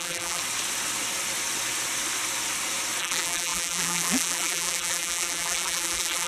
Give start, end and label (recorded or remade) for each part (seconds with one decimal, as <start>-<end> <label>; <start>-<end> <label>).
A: 0.0-0.4 remade; 0.4-3.0 recorded; 3.0-6.3 remade

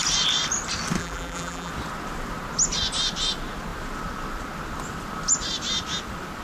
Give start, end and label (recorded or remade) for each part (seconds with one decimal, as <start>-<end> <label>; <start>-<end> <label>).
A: 0.0-1.0 recorded; 1.0-1.7 remade; 1.7-6.4 recorded

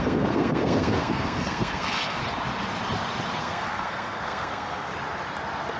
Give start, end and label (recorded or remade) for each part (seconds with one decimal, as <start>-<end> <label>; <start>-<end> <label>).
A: 0.0-2.2 remade; 2.2-3.4 recorded; 3.4-4.9 remade; 4.9-5.8 recorded

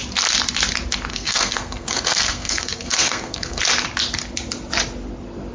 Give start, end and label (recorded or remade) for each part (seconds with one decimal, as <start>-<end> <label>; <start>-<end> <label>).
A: 0.0-1.1 recorded; 1.1-3.6 remade; 3.6-5.5 recorded

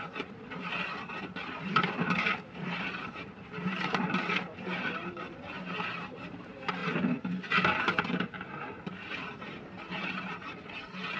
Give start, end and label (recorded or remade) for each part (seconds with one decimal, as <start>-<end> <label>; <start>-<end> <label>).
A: 0.0-6.8 remade; 6.8-7.6 recorded; 7.6-11.2 remade

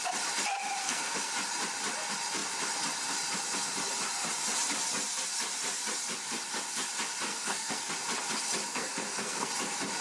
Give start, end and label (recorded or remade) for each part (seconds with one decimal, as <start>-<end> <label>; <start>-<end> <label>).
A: 0.0-0.8 recorded; 0.8-1.3 remade; 1.3-7.3 recorded; 7.3-7.9 remade; 7.9-8.7 recorded; 8.7-9.5 remade; 9.5-10.0 recorded